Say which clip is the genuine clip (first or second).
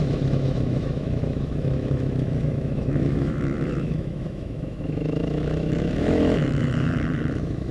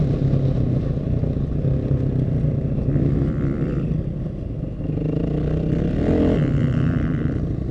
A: second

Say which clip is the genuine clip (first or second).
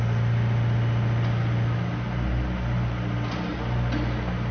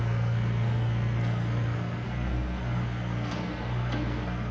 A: first